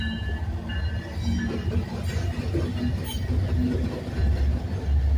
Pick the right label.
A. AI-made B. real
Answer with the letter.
B